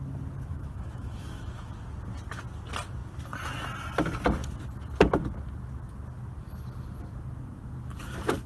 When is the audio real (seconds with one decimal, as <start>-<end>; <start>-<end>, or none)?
0.0-0.5; 1.7-8.5